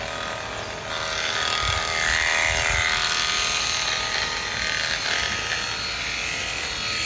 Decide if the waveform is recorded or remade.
recorded